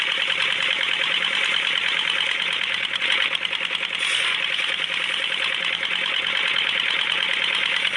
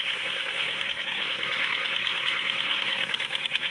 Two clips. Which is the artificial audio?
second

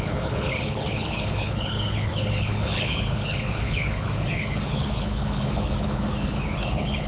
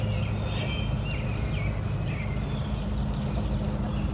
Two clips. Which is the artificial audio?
first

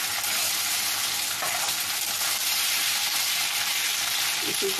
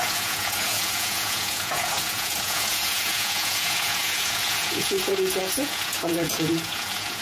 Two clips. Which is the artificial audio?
second